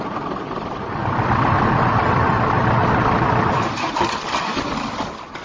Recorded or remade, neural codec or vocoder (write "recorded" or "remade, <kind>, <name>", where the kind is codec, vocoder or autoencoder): remade, vocoder, BigVGAN v2